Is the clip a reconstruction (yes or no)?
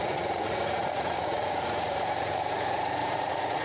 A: yes